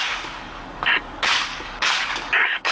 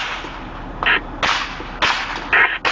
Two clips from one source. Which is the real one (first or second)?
second